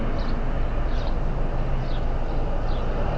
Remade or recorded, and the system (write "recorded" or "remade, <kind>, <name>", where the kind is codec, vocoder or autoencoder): recorded